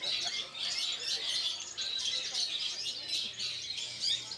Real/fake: real